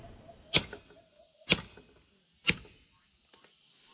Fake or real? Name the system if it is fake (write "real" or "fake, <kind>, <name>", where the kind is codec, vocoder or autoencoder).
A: real